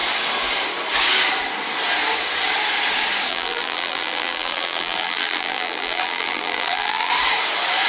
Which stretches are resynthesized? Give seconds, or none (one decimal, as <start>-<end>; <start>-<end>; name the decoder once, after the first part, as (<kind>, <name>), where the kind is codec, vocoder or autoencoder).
3.3-7.1 (vocoder, BigVGAN v2)